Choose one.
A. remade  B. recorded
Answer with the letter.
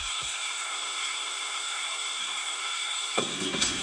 A